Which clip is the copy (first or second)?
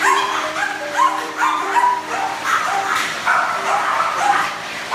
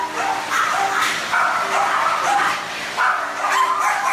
first